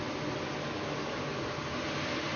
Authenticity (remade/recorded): recorded